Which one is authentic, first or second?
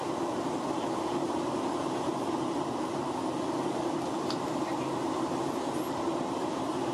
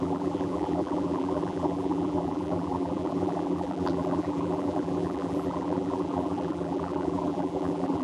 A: first